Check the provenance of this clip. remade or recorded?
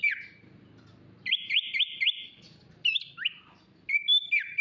recorded